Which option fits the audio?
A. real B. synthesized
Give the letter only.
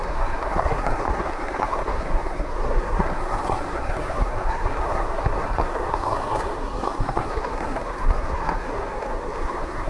B